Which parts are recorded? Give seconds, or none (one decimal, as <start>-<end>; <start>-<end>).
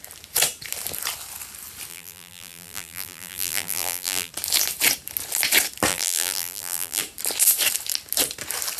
0.0-1.9; 4.3-5.9; 7.0-8.8